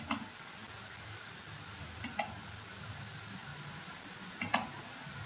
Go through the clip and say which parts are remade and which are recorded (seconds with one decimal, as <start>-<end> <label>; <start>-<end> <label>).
0.0-5.3 recorded